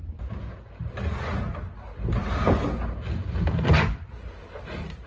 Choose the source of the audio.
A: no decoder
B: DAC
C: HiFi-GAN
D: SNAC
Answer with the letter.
A